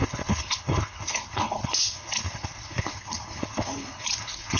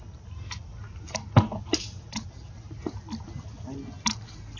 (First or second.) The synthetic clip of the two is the first